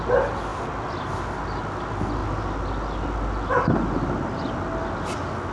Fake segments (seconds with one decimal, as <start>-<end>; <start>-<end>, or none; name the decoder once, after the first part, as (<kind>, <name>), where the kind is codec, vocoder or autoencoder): none